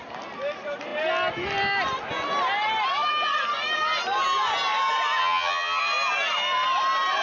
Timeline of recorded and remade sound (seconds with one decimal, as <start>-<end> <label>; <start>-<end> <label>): 0.0-5.2 recorded; 5.2-5.8 remade; 5.8-7.2 recorded